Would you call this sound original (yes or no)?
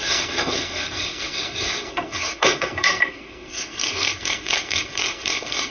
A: no